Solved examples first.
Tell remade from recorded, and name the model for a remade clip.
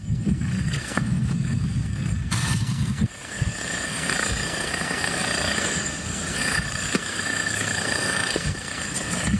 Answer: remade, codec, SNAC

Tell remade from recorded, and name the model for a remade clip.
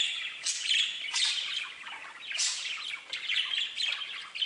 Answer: recorded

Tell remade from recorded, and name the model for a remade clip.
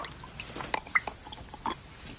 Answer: recorded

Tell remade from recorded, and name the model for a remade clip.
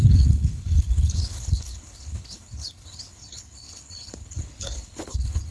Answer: remade, codec, HILCodec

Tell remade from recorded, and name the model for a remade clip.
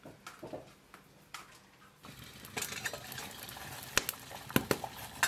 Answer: recorded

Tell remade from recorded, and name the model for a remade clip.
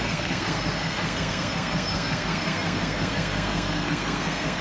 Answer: remade, codec, SNAC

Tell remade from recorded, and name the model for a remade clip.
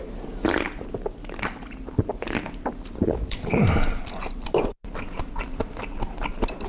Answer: recorded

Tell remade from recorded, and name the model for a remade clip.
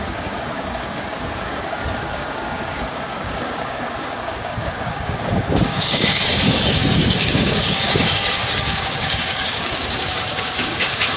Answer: remade, codec, DAC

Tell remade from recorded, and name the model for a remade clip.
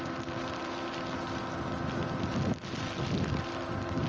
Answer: recorded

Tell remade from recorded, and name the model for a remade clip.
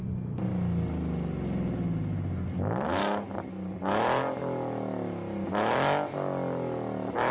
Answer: recorded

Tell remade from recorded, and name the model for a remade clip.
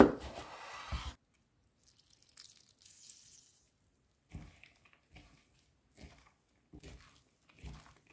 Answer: recorded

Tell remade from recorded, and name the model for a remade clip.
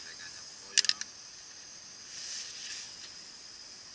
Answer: recorded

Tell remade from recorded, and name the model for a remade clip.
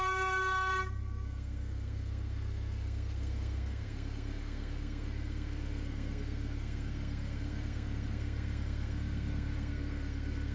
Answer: remade, codec, SNAC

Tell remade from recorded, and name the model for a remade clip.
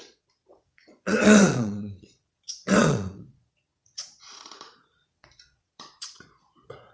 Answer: remade, vocoder, Vocos